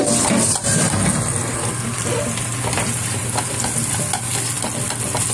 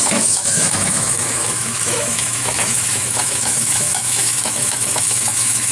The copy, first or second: second